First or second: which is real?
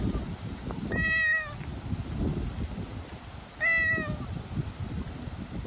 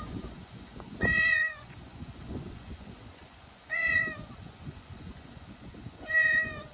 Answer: first